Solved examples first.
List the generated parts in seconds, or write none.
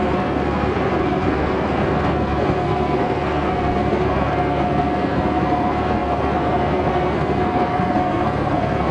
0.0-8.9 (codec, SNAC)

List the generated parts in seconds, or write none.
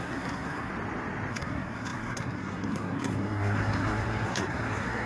0.0-0.7 (codec, SNAC); 1.3-5.1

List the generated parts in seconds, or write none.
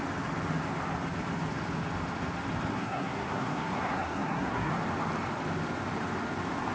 2.7-4.7 (codec, SNAC)